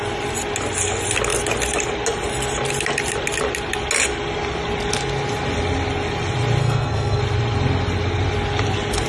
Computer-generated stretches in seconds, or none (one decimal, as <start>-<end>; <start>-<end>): 6.6-7.2